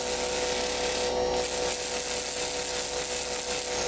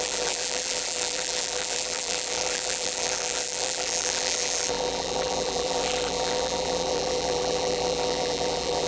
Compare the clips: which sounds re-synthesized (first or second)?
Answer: second